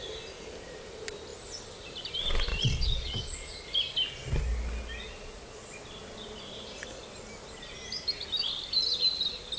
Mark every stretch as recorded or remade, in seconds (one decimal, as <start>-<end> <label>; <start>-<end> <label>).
0.0-2.5 recorded; 2.5-3.7 remade; 3.7-5.1 recorded; 5.1-5.7 remade; 5.7-9.6 recorded